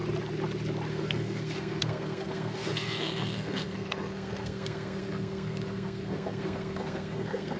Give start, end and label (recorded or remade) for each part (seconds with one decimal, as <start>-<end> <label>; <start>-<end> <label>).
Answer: 0.0-0.9 recorded; 0.9-7.6 remade

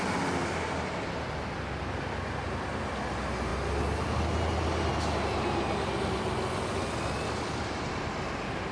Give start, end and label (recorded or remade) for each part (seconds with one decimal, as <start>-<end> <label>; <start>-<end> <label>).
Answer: 0.0-8.7 recorded

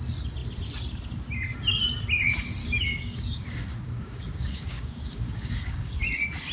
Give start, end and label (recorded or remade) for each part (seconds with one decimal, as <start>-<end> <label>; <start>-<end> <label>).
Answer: 0.0-2.6 recorded; 2.6-6.0 remade; 6.0-6.5 recorded

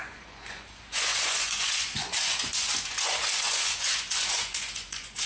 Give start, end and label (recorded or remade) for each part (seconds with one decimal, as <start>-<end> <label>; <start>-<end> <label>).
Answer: 0.0-5.3 remade

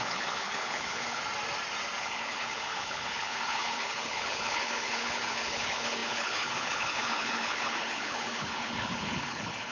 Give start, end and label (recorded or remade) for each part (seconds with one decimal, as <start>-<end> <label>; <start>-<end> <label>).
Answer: 0.0-1.2 remade; 1.2-2.0 recorded; 2.0-9.7 remade

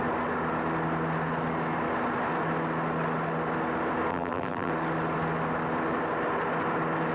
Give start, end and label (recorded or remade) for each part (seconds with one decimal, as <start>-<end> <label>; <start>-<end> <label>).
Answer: 0.0-4.1 recorded; 4.1-4.7 remade; 4.7-7.1 recorded

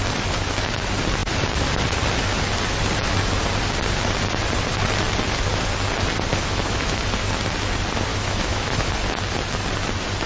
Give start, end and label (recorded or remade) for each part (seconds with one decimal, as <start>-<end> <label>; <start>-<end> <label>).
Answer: 0.0-6.3 recorded; 6.3-7.0 remade; 7.0-8.1 recorded; 8.1-8.9 remade; 8.9-10.3 recorded

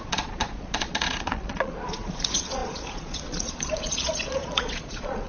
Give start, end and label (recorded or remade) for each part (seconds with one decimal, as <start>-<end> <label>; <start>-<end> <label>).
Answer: 0.0-5.3 remade